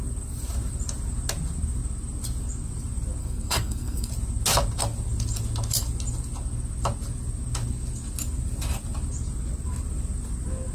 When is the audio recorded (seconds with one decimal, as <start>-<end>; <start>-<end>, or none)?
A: 0.0-3.2; 4.1-10.7